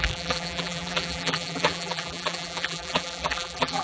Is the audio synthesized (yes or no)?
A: yes